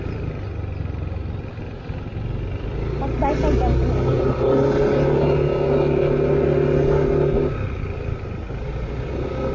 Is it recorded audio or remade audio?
recorded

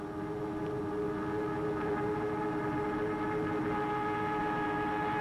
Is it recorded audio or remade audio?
recorded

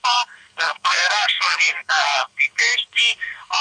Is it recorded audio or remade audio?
remade